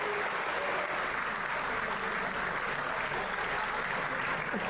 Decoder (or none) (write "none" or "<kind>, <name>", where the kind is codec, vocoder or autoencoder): none